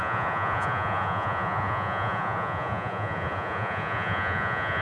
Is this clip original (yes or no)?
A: no